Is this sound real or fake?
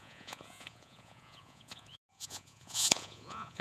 fake